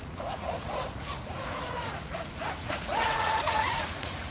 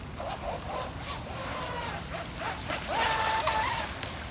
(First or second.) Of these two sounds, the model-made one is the first